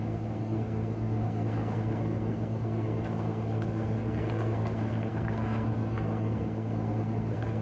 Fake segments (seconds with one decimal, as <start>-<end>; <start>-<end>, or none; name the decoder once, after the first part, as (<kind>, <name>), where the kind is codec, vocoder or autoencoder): 0.0-7.6 (codec, SNAC)